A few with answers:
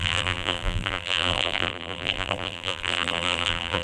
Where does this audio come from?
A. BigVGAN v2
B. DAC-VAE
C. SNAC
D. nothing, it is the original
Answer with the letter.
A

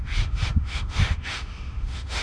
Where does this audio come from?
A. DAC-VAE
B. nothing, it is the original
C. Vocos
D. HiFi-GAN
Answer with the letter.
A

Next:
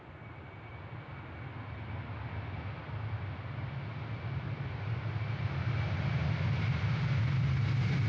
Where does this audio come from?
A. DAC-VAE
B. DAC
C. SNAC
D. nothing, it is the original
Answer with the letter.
D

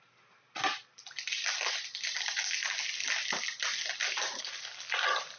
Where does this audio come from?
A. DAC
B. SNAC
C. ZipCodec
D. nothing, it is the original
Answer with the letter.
D